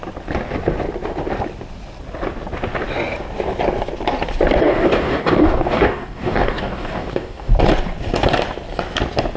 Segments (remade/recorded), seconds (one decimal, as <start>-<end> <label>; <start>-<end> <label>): 0.0-4.6 recorded; 4.6-7.5 remade; 7.5-9.4 recorded